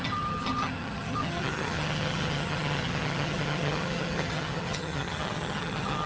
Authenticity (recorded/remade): remade